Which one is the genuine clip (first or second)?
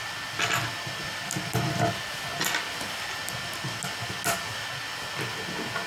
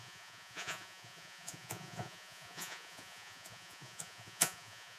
first